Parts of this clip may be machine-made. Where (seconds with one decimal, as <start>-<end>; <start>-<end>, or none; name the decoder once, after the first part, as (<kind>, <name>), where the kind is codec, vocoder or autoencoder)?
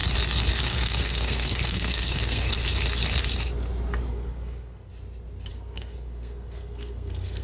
0.6-2.6 (codec, SNAC); 4.1-4.9; 5.5-7.4